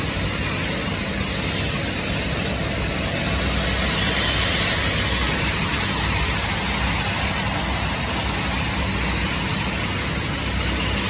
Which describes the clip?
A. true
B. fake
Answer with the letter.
A